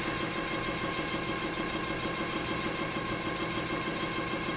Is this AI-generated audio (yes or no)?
no